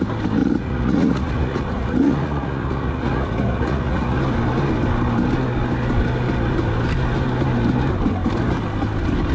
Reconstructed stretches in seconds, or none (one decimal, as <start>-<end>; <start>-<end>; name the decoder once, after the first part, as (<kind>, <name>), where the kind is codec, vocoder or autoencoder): 0.4-4.2 (vocoder, Vocos)